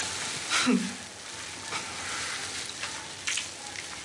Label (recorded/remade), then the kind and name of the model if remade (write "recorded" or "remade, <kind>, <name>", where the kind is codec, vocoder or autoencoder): recorded